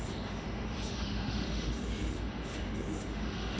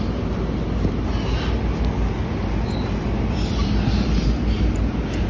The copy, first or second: first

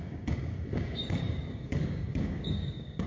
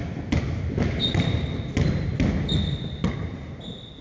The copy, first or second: first